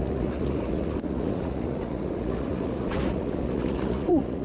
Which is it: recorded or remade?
remade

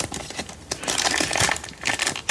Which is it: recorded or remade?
recorded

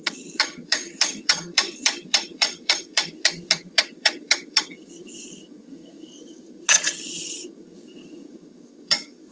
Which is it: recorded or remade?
remade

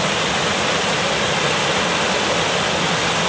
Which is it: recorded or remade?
recorded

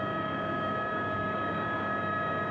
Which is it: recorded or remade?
remade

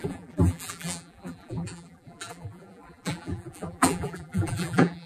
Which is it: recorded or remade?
remade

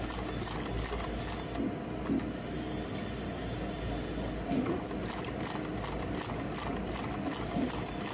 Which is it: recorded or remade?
recorded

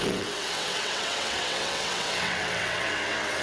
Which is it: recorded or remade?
remade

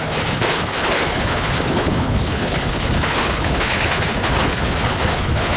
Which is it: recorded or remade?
remade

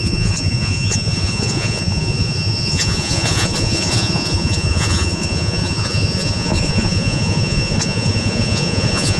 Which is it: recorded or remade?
remade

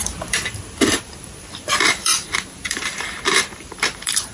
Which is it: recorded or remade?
remade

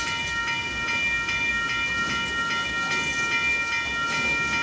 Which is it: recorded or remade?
recorded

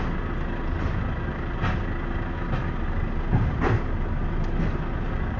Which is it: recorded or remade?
recorded